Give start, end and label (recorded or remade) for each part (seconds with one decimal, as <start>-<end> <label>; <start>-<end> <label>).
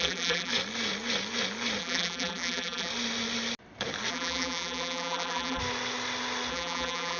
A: 0.0-0.5 remade; 0.5-1.8 recorded; 1.8-2.9 remade; 2.9-4.1 recorded; 4.1-5.6 remade; 5.6-6.5 recorded; 6.5-7.2 remade